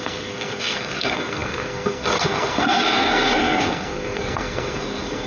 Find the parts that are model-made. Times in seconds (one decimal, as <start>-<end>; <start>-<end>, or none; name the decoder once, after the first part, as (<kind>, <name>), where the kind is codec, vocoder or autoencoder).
0.0-5.3 (codec, SNAC)